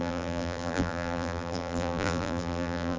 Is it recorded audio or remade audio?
remade